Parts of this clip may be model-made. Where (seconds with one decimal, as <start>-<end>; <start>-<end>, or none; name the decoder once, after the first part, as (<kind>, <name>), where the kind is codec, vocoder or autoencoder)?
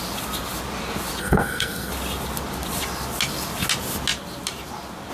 1.2-1.9 (codec, SNAC)